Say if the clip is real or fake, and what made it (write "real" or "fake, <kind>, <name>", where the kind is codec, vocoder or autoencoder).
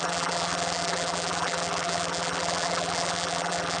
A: fake, vocoder, BigVGAN v2